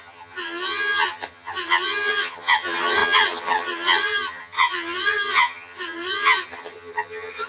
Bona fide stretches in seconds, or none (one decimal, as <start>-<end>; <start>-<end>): none